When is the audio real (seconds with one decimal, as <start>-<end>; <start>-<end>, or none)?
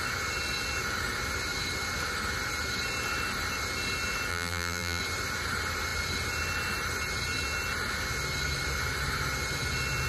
0.0-4.3; 5.0-10.1